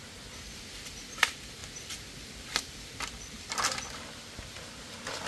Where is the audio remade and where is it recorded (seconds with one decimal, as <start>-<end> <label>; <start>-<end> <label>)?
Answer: 0.0-1.6 recorded; 1.6-4.8 remade; 4.8-5.3 recorded

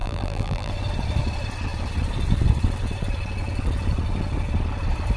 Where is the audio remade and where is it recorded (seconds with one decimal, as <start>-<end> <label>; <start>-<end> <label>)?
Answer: 0.0-0.7 remade; 0.7-5.2 recorded

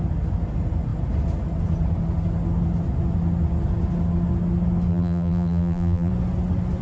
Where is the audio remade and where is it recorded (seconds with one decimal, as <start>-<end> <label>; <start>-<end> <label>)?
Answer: 0.0-4.9 recorded; 4.9-6.1 remade; 6.1-6.8 recorded

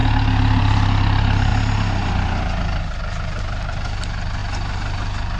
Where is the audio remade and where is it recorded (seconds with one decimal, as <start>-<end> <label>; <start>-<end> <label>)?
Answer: 0.0-0.6 recorded; 0.6-1.5 remade; 1.5-3.0 recorded; 3.0-5.4 remade

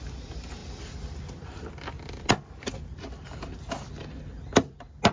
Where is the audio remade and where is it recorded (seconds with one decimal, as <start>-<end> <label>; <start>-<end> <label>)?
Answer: 0.0-5.1 recorded

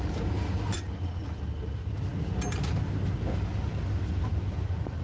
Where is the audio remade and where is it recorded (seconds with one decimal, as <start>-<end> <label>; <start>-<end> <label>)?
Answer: 0.0-5.0 recorded